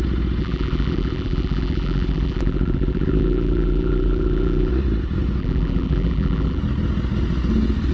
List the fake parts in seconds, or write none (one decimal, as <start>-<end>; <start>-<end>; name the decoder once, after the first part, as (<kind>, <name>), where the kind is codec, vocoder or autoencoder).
0.4-4.7 (vocoder, BigVGAN v2); 5.4-6.6